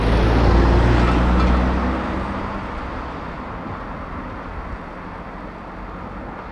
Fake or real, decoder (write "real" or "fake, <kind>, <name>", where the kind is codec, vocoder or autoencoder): real